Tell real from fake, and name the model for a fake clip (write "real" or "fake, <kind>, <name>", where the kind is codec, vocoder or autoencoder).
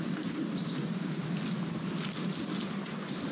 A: real